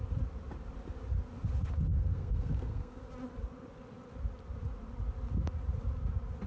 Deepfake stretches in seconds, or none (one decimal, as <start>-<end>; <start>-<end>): 1.9-3.0